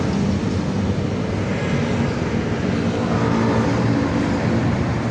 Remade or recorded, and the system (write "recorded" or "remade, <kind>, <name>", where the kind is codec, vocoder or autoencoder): recorded